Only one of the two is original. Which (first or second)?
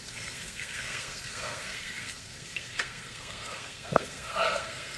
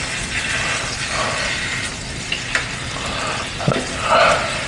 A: second